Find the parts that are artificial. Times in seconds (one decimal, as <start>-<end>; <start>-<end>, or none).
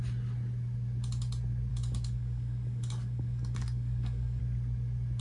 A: 1.7-4.4